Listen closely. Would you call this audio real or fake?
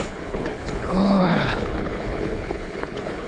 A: fake